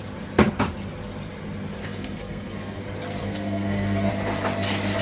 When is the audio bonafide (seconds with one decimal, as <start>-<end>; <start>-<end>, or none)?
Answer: 0.0-1.8; 2.8-3.2; 4.1-5.0